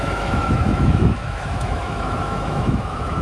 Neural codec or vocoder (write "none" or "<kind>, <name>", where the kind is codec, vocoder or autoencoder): autoencoder, DAC-VAE